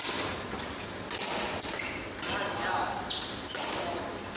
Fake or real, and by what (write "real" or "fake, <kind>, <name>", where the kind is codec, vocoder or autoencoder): real